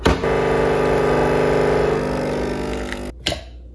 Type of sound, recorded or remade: recorded